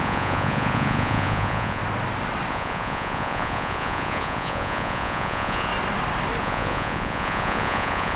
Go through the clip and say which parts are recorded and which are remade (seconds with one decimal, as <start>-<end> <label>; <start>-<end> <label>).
0.0-1.8 remade; 1.8-2.5 recorded; 2.5-5.7 remade; 5.7-6.4 recorded; 6.4-8.2 remade